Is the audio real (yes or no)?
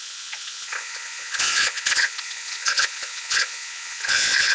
no